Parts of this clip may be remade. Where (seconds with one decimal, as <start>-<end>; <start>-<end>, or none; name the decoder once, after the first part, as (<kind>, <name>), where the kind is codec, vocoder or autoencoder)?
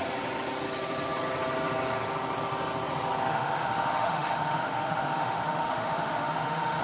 3.3-6.8 (autoencoder, DAC-VAE)